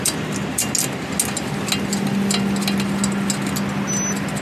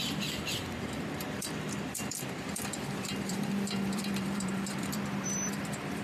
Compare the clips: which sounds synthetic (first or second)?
second